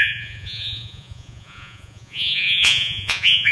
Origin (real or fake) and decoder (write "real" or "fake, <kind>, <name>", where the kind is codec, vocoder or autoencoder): fake, vocoder, Vocos